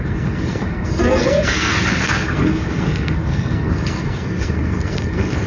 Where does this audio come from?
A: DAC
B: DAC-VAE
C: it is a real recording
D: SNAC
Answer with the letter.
D